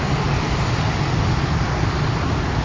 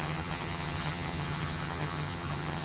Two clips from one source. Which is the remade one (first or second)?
second